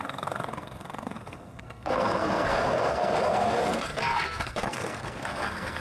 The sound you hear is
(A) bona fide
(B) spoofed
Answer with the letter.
B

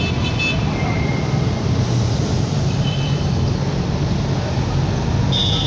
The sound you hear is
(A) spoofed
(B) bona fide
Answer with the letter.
B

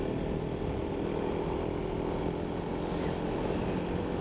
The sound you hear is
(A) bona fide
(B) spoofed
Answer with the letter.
A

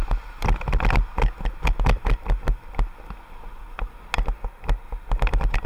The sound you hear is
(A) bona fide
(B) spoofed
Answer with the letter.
A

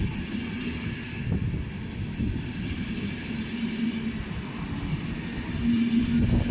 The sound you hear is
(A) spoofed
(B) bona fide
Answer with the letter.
B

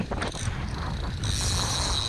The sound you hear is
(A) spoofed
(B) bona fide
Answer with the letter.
B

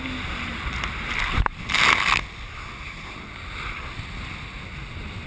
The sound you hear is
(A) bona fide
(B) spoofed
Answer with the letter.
A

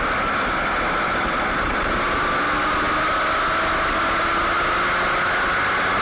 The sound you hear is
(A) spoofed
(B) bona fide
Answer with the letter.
B